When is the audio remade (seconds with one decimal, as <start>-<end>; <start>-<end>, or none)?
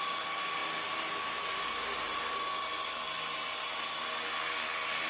none